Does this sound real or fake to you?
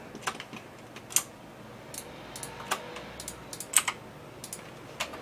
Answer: real